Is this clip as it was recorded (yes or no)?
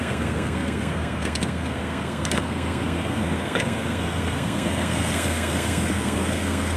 no